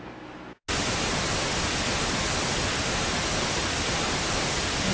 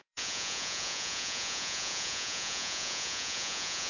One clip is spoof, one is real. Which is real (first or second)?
first